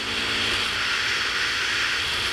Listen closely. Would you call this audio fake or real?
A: real